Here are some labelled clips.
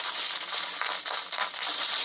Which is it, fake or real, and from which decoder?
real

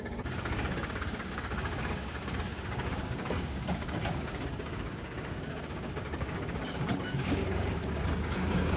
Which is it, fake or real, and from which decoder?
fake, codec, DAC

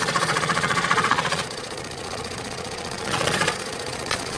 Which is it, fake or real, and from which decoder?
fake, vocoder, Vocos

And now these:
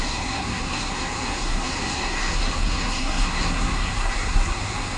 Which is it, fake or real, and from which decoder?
fake, codec, SNAC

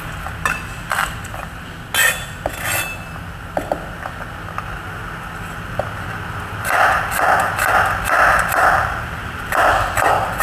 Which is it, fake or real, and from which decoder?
real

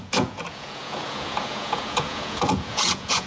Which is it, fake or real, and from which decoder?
fake, vocoder, Vocos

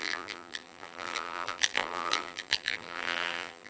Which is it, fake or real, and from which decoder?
fake, vocoder, BigVGAN v2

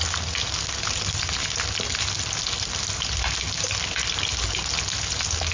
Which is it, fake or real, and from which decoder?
real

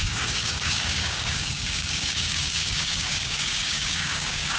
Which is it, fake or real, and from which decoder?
fake, codec, DAC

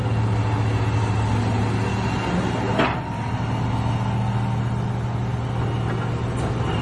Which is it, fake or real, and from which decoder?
real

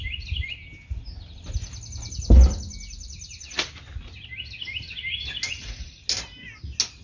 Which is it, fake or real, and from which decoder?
real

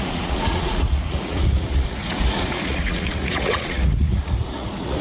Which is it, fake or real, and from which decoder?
fake, vocoder, Vocos